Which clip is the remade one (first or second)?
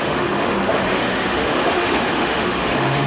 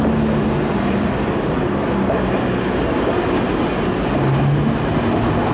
first